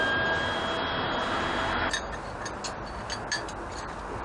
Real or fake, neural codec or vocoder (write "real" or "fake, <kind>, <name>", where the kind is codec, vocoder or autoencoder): real